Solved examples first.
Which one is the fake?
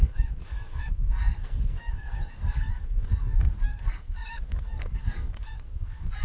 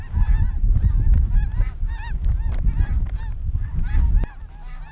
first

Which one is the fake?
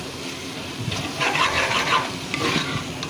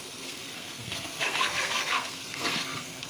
second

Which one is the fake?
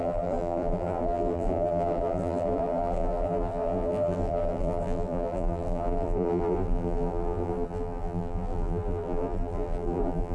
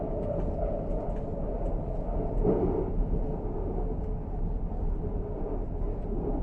first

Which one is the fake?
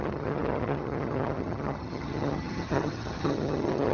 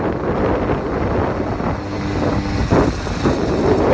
first